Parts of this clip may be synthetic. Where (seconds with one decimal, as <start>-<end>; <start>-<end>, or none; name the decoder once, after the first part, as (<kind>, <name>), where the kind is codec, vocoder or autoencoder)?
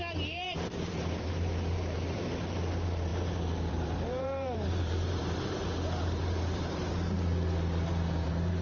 0.0-3.1 (vocoder, BigVGAN v2); 3.7-8.6